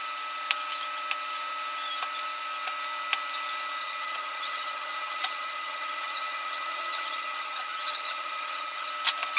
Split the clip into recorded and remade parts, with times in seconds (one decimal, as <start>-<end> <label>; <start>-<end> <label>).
0.0-3.8 recorded; 3.8-8.9 remade; 8.9-9.4 recorded